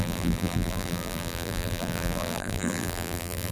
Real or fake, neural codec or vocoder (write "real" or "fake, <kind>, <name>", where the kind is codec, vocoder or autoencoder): fake, vocoder, BigVGAN v2